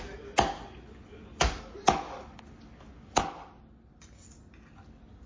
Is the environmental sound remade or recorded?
recorded